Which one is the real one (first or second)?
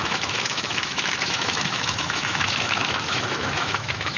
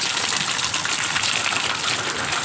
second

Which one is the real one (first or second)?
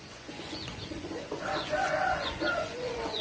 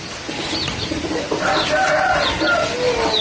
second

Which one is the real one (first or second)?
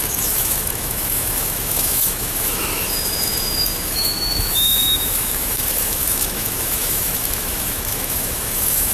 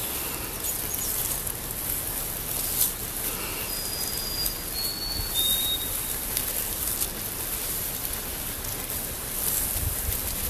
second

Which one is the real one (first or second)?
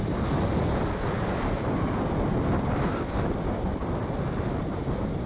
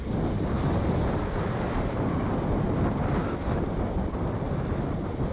first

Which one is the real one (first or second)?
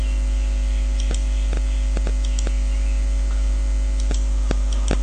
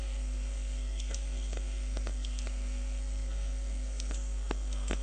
first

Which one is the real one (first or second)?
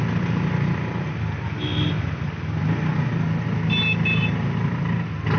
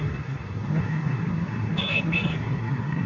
first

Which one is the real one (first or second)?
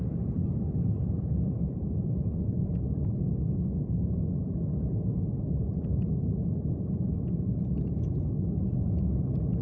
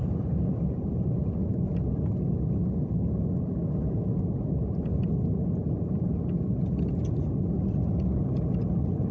second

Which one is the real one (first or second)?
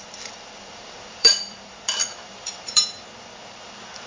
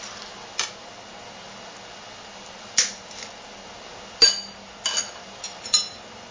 second